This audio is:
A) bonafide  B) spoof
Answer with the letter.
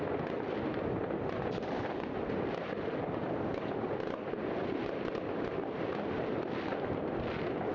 A